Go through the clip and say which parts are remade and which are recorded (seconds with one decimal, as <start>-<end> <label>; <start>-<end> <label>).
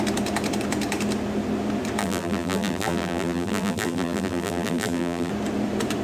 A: 0.0-2.0 recorded; 2.0-5.3 remade; 5.3-6.0 recorded